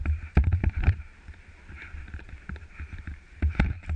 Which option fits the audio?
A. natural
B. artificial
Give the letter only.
B